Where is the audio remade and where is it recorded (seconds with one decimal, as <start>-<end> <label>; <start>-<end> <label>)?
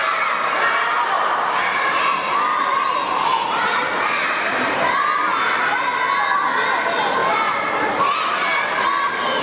0.0-2.8 remade; 2.8-3.3 recorded; 3.3-4.0 remade; 4.0-7.2 recorded; 7.2-7.9 remade; 7.9-9.4 recorded